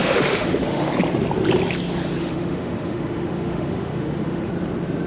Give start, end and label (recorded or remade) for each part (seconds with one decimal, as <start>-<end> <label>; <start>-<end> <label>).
0.0-0.9 remade; 0.9-2.2 recorded; 2.2-4.5 remade; 4.5-5.1 recorded